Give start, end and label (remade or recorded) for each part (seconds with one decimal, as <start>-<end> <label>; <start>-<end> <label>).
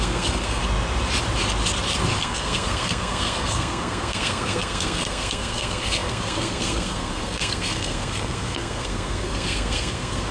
0.0-0.6 remade; 0.6-2.2 recorded; 2.2-10.3 remade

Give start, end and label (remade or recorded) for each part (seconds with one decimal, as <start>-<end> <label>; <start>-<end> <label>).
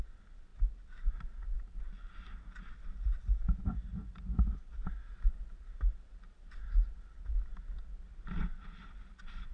0.0-9.5 recorded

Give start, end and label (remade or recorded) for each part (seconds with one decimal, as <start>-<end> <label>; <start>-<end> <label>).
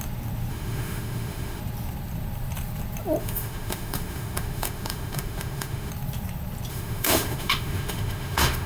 0.0-0.5 recorded; 0.5-1.6 remade; 1.6-3.2 recorded; 3.2-5.9 remade; 5.9-6.7 recorded; 6.7-8.7 remade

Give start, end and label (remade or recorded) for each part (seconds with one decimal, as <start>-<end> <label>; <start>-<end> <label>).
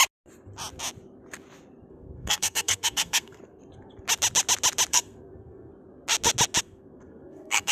0.0-1.9 recorded; 1.9-3.6 remade; 3.6-4.9 recorded; 4.9-5.7 remade; 5.7-6.6 recorded; 6.6-7.7 remade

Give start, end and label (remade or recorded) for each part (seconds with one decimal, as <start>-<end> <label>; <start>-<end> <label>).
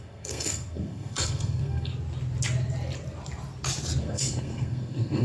0.0-1.9 remade; 1.9-4.0 recorded; 4.0-5.2 remade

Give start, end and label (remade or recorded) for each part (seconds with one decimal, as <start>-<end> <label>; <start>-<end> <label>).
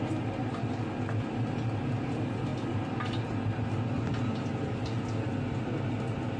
0.0-6.4 recorded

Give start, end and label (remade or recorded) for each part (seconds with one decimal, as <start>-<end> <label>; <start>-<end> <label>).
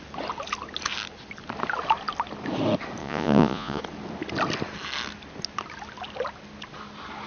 0.0-3.0 recorded; 3.0-3.8 remade; 3.8-7.3 recorded